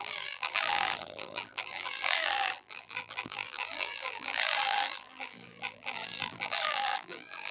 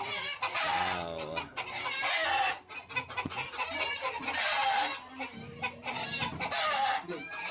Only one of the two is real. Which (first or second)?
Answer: second